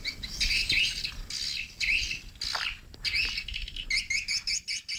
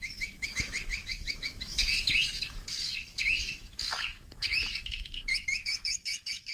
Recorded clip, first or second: first